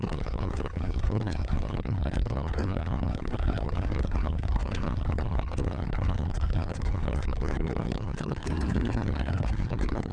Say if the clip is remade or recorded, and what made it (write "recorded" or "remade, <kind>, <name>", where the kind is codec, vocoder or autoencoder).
remade, codec, SNAC